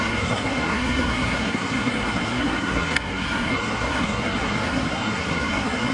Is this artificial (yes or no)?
yes